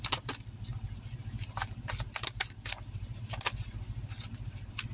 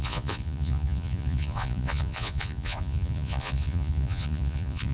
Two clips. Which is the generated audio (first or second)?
second